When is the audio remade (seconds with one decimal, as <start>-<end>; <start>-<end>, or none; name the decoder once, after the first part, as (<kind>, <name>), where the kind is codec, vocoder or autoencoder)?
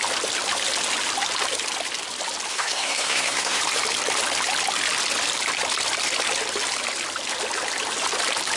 2.5-3.6 (codec, SNAC)